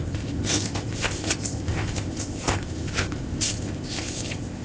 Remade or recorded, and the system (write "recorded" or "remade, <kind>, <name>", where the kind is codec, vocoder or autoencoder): remade, codec, ZipCodec